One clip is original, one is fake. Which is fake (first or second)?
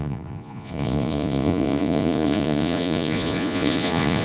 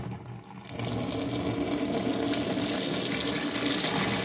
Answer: first